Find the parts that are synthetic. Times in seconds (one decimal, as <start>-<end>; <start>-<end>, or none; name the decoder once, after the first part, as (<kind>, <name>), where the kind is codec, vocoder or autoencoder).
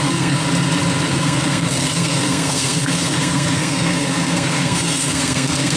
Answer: 0.0-0.4 (codec, SNAC); 1.1-5.8